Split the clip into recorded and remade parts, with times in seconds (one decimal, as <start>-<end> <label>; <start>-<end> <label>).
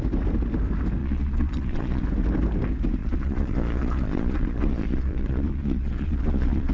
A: 0.0-1.0 recorded; 1.0-2.0 remade; 2.0-3.0 recorded; 3.0-6.7 remade